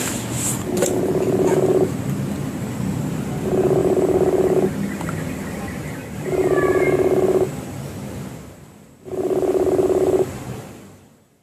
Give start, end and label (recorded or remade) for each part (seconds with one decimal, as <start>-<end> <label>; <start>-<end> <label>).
0.0-3.8 recorded; 3.8-5.6 remade; 5.6-6.0 recorded; 6.0-9.8 remade; 9.8-11.4 recorded